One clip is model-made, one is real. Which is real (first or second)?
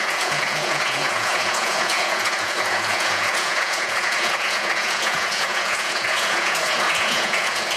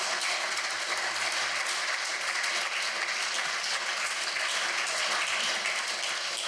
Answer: second